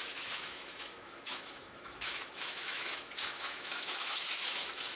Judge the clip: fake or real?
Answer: fake